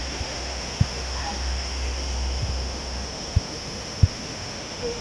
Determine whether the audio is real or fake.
fake